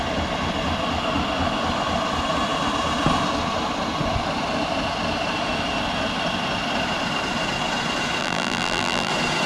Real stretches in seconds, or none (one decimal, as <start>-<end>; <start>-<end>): 0.0-8.2; 9.1-9.5